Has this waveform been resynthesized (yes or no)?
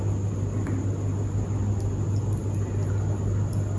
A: no